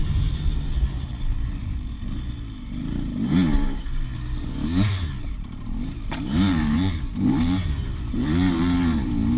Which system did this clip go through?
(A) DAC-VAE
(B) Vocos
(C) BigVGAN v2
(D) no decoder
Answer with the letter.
C